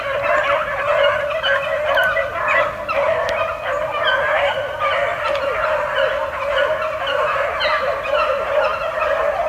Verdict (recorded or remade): recorded